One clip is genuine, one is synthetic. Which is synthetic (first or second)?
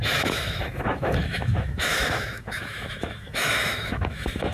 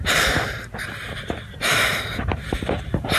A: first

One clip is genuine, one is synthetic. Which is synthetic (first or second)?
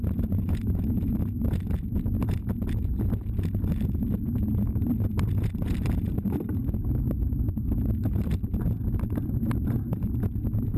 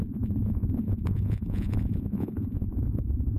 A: second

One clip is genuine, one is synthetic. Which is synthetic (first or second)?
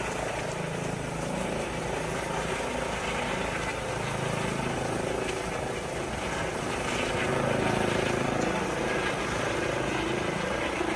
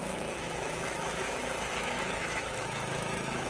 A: second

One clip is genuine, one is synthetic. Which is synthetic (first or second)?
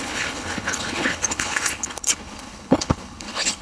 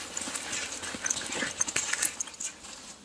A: first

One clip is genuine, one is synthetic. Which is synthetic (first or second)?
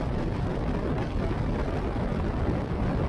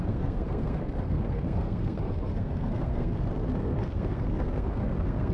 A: second